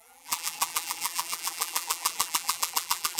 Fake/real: fake